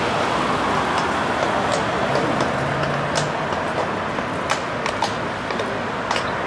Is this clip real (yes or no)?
yes